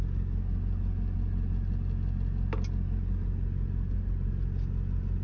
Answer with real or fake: real